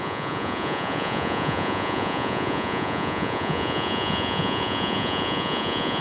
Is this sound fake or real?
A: fake